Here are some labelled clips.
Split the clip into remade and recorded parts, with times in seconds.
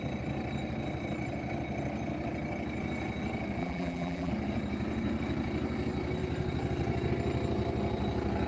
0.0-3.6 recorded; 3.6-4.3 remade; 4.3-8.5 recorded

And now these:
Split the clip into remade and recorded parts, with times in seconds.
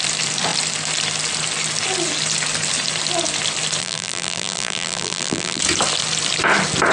0.0-3.8 recorded; 3.8-5.6 remade; 5.6-6.9 recorded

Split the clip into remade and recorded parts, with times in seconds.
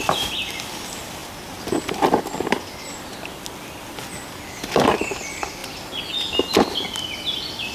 0.0-7.7 remade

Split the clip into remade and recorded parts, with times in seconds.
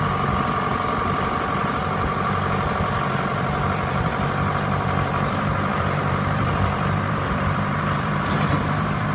0.0-9.1 remade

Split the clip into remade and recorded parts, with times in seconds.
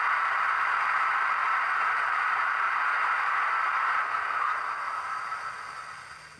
0.0-1.4 recorded; 1.4-4.9 remade; 4.9-6.4 recorded